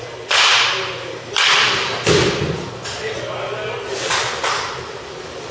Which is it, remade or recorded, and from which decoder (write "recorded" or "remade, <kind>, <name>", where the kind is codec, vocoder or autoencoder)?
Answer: recorded